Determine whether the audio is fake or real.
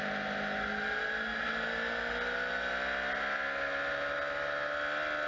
real